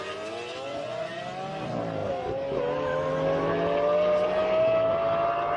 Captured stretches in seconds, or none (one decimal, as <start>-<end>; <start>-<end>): 0.0-0.7; 1.2-5.6